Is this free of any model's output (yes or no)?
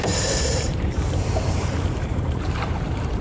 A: no